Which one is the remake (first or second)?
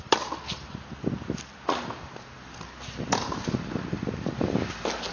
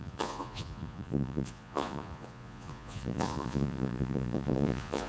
second